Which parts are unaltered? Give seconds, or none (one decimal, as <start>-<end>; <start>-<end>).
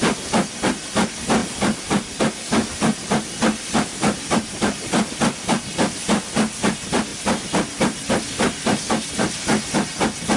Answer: 0.0-1.4; 2.2-7.1; 8.9-10.4